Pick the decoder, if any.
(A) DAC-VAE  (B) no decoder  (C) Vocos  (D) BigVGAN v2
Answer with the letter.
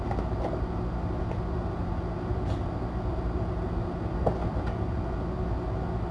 B